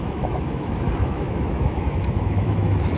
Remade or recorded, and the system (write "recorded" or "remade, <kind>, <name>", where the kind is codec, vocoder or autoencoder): remade, autoencoder, DAC-VAE